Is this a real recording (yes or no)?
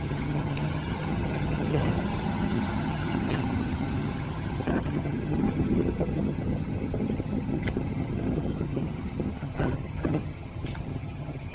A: no